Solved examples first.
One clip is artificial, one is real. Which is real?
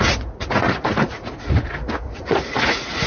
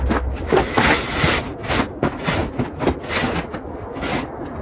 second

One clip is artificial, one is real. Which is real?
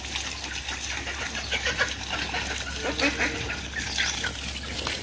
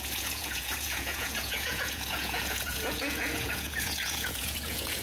first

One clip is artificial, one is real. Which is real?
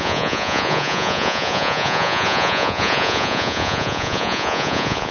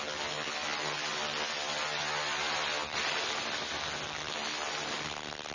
second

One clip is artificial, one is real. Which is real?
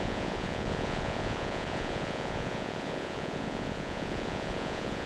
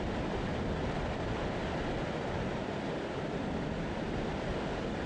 second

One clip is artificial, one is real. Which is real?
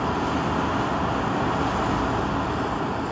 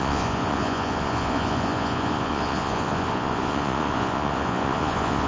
first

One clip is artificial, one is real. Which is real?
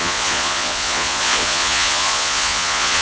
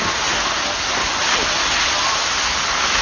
second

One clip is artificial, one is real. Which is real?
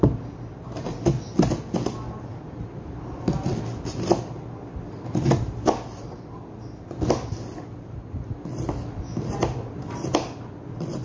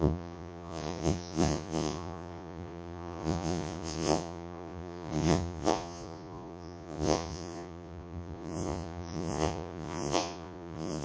first